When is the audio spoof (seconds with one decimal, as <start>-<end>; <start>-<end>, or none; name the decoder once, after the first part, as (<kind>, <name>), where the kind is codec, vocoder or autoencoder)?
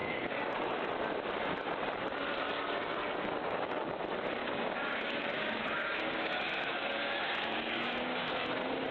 0.0-0.8 (codec, DAC); 3.4-3.9; 4.4-8.3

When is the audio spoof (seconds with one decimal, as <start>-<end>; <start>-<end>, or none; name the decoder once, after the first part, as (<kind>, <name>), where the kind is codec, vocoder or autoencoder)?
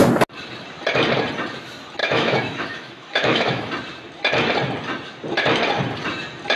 2.0-3.7 (autoencoder, DAC-VAE)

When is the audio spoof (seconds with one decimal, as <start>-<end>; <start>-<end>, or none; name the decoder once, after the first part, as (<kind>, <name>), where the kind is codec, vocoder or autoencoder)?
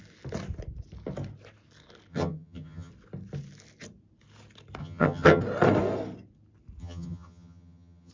2.1-2.9 (vocoder, HiFi-GAN); 4.8-5.4; 6.8-8.1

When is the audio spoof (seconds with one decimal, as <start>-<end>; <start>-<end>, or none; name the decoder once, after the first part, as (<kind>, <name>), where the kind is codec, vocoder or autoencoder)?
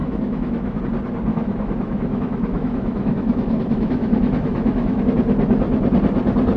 0.0-0.8 (autoencoder, DAC-VAE); 1.3-5.0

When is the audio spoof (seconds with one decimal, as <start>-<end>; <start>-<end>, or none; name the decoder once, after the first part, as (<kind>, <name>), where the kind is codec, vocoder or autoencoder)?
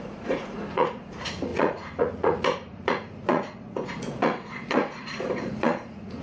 0.0-6.2 (vocoder, Vocos)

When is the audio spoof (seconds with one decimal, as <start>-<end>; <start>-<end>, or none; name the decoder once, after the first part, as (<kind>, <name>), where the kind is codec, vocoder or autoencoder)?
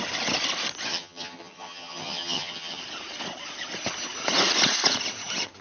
0.9-2.8 (vocoder, HiFi-GAN)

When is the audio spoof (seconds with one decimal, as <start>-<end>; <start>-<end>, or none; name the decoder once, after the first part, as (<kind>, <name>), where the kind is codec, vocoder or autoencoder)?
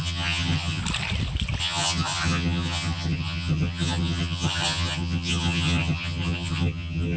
0.0-0.8 (vocoder, HiFi-GAN); 1.6-7.2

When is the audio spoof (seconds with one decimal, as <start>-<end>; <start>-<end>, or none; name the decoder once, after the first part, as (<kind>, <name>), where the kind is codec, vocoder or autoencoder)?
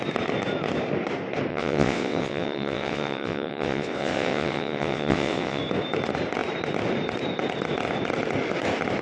1.5-5.6 (vocoder, WaveNeXt)